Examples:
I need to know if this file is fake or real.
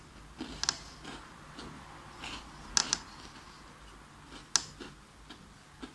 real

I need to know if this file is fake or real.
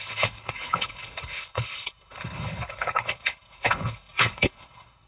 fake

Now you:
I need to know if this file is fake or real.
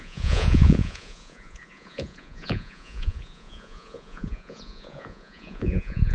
fake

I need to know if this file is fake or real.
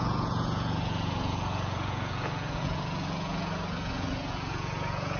fake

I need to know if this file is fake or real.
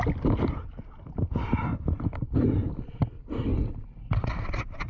real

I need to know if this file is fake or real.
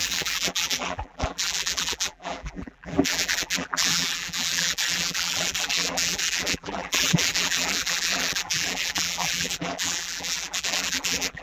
fake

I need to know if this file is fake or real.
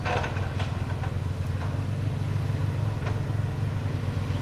real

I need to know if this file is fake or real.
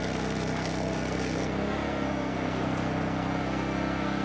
fake